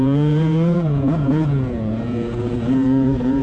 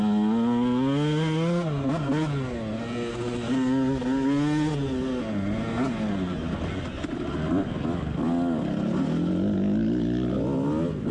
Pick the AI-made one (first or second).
first